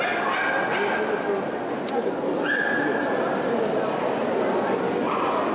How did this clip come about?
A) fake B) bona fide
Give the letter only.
B